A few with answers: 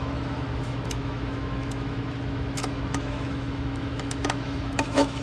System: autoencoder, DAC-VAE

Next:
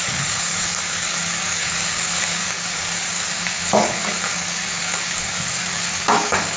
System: codec, DAC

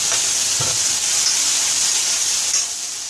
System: none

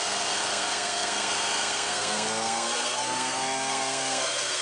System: codec, SNAC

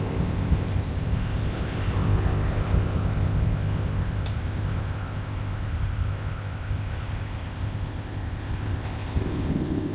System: codec, ZipCodec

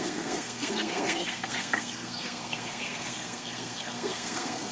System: codec, SNAC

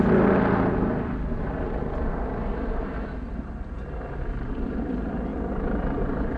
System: none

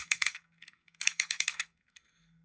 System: codec, SNAC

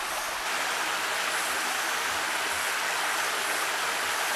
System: none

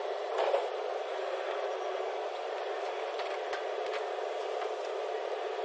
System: none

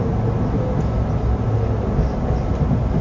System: none